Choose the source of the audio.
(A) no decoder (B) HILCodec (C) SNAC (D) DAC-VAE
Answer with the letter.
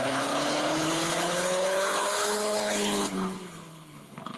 B